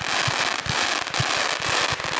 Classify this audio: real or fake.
real